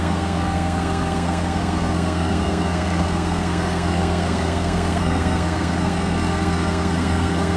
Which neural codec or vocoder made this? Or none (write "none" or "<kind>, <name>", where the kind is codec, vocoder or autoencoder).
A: codec, SNAC